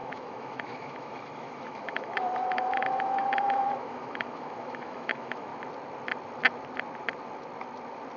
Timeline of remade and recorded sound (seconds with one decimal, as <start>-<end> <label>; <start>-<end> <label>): 0.0-5.5 remade; 5.5-8.2 recorded